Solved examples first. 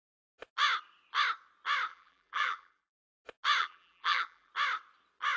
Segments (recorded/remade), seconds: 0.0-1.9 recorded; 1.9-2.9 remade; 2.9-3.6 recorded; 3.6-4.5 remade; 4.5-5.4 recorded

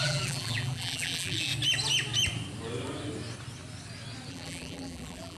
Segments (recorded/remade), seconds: 0.0-1.5 remade; 1.5-4.3 recorded; 4.3-5.4 remade

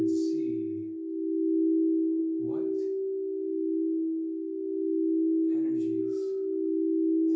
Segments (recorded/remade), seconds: 0.0-7.4 recorded

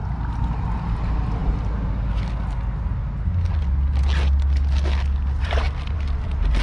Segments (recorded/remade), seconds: 0.0-0.9 recorded; 0.9-1.4 remade; 1.4-5.4 recorded; 5.4-6.6 remade

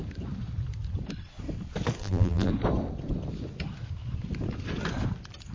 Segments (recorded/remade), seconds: 0.0-2.0 recorded; 2.0-2.5 remade; 2.5-5.5 recorded